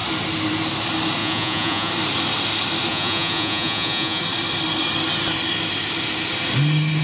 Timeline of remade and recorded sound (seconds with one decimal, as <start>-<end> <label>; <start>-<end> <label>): 0.0-1.2 recorded; 1.2-1.9 remade; 1.9-2.9 recorded; 2.9-4.2 remade; 4.2-7.0 recorded